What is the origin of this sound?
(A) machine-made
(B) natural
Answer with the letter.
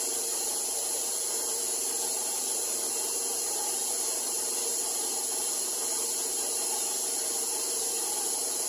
A